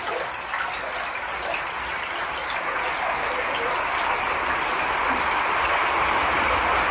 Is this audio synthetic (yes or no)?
no